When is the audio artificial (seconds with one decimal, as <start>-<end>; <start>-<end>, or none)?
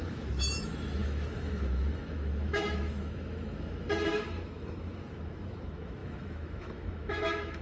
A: 0.0-7.6